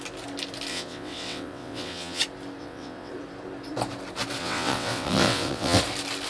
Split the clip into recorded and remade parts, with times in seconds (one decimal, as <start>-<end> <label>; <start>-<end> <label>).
0.0-0.7 recorded; 0.7-2.2 remade; 2.2-2.6 recorded; 2.6-3.1 remade; 3.1-4.4 recorded; 4.4-5.8 remade; 5.8-6.3 recorded